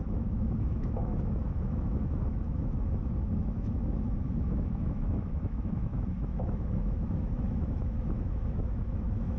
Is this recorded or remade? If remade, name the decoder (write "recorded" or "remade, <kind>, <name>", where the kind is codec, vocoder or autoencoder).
remade, autoencoder, DAC-VAE